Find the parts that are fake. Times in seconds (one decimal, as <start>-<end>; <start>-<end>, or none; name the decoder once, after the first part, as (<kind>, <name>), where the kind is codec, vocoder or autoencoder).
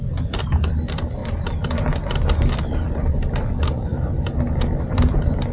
0.0-1.2 (vocoder, BigVGAN v2); 2.9-5.5